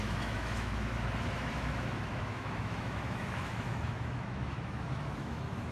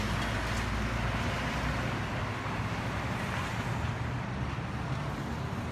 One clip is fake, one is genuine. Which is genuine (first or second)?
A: second